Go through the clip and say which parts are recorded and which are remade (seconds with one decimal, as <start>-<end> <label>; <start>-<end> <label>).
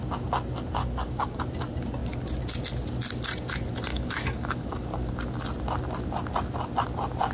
0.0-0.8 recorded; 0.8-1.4 remade; 1.4-3.9 recorded; 3.9-5.1 remade; 5.1-7.3 recorded